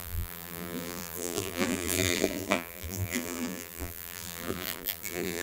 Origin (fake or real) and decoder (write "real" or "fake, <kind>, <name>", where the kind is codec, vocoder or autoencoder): fake, vocoder, BigVGAN v2